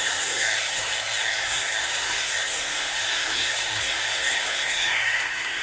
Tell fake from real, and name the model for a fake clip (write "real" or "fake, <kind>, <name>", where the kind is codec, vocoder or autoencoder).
fake, codec, SNAC